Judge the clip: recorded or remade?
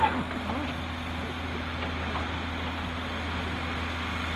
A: recorded